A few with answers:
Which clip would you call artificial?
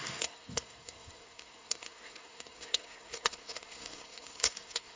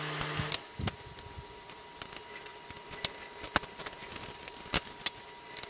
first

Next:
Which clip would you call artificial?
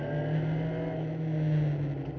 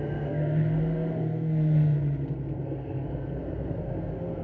second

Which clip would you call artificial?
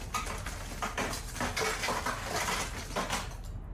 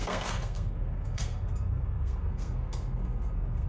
second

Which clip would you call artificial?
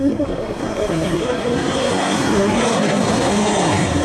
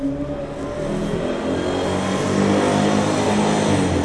first